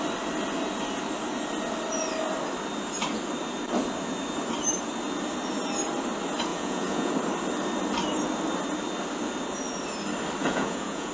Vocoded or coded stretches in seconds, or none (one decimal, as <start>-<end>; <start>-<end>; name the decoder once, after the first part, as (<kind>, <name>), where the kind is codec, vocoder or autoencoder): 6.5-7.1 (vocoder, Vocos); 10.4-11.1